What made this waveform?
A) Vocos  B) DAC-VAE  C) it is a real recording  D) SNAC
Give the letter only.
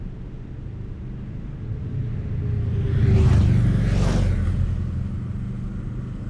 C